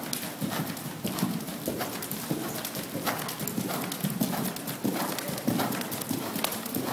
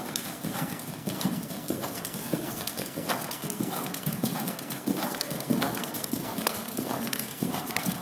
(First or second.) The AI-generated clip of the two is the second